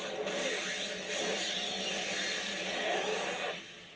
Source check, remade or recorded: recorded